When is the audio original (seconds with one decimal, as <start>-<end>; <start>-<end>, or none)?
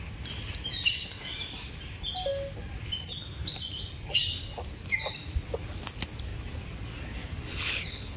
0.0-7.5